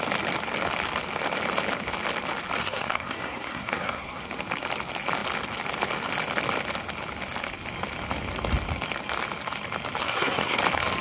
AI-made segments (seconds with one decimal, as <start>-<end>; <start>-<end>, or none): 2.6-4.2; 10.0-10.6